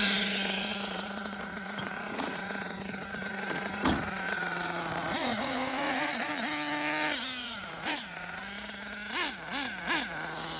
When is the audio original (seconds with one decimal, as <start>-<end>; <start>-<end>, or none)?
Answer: 6.3-7.4; 8.4-10.6